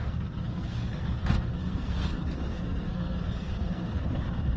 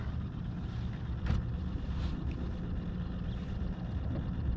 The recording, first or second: second